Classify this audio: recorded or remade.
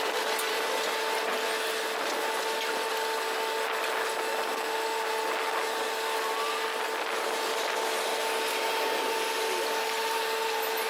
recorded